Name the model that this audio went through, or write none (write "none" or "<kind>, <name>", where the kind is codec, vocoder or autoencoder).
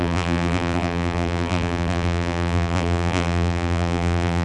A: vocoder, BigVGAN v2